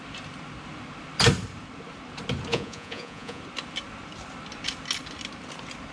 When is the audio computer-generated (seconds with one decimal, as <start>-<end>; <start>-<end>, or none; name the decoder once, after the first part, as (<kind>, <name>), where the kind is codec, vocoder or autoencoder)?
2.5-3.4 (vocoder, Vocos)